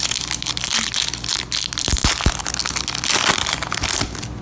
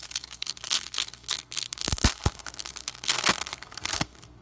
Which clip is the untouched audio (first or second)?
first